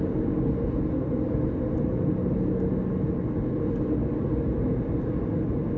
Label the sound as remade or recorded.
recorded